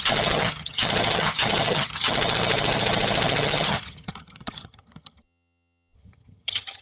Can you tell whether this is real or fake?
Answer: fake